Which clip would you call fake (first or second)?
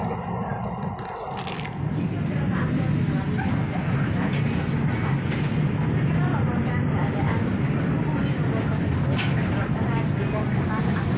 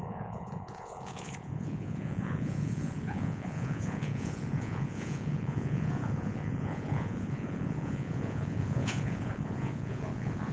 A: second